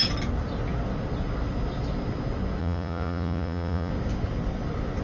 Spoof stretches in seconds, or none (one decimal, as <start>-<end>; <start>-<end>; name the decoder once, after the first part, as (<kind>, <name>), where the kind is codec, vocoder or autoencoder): 2.6-3.9 (vocoder, Vocos)